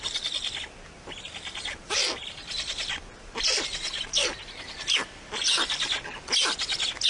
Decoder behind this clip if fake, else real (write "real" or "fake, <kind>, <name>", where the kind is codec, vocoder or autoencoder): real